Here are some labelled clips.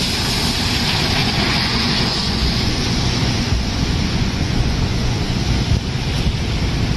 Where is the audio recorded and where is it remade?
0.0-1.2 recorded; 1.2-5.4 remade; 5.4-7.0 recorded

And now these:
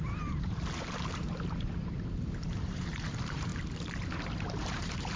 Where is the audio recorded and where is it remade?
0.0-3.5 remade; 3.5-4.2 recorded; 4.2-5.2 remade

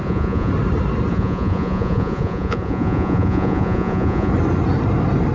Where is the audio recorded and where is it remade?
0.0-0.5 remade; 0.5-1.1 recorded; 1.1-4.3 remade; 4.3-5.3 recorded

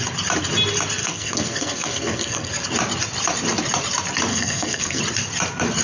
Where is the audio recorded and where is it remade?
0.0-1.0 recorded; 1.0-2.5 remade; 2.5-4.3 recorded; 4.3-5.0 remade; 5.0-5.8 recorded

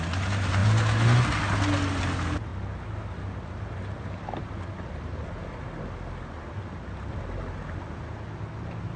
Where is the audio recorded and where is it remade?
0.0-9.0 recorded

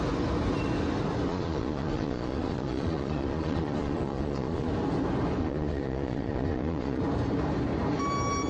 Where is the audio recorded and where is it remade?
0.0-1.3 recorded; 1.3-4.7 remade; 4.7-5.4 recorded; 5.4-7.0 remade; 7.0-8.5 recorded

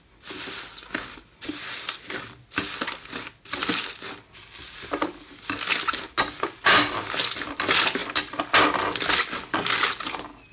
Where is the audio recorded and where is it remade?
0.0-10.5 recorded

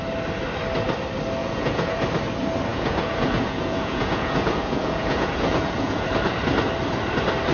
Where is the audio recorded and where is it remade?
0.0-1.4 recorded; 1.4-2.0 remade; 2.0-2.7 recorded; 2.7-6.1 remade; 6.1-7.5 recorded